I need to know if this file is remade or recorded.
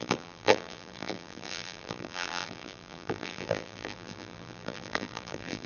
remade